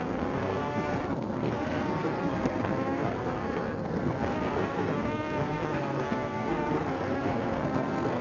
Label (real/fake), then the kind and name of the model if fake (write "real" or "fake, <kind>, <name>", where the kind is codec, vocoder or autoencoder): fake, codec, SNAC